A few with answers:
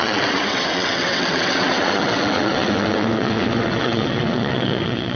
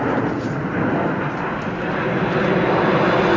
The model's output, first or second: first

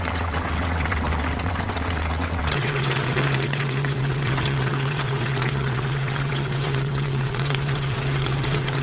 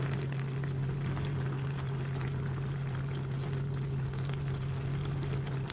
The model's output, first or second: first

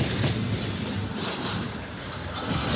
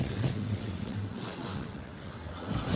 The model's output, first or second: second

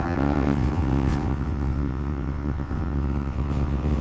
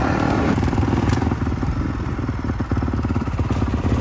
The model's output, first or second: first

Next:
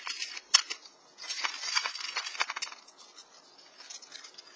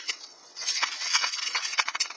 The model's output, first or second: second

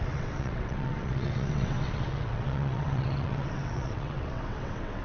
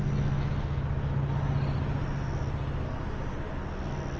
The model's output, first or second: first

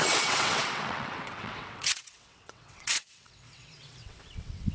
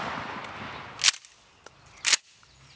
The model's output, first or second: first